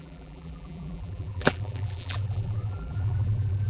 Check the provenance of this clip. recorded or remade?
remade